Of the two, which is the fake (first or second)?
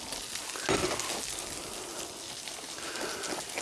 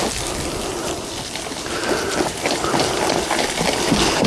second